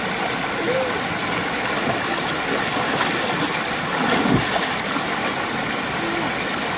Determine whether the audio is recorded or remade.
recorded